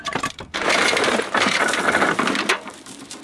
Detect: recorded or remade remade